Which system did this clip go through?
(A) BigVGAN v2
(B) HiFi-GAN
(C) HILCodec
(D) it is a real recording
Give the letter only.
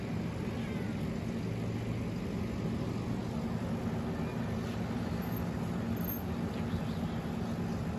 D